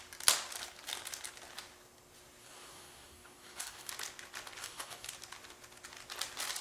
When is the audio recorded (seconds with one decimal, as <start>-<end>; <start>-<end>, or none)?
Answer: 0.0-2.4; 3.9-4.6; 5.1-6.6